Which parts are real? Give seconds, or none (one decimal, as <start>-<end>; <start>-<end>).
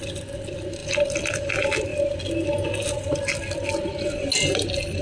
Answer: 0.0-5.0